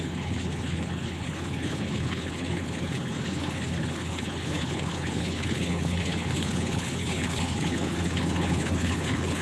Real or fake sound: fake